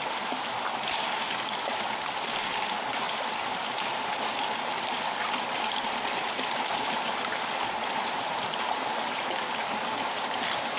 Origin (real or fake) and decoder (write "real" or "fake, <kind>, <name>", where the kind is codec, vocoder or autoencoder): real